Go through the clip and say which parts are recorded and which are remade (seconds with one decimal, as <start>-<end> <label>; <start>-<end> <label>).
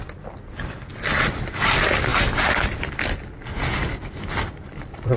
0.0-5.2 recorded